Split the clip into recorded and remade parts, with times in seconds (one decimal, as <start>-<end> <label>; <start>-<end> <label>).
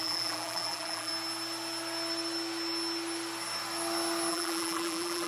0.0-1.1 remade; 1.1-4.3 recorded; 4.3-5.3 remade